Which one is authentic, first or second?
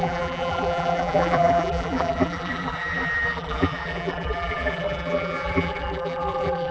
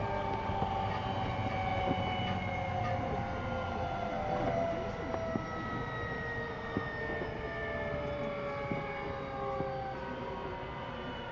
second